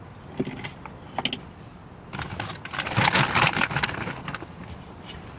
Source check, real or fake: real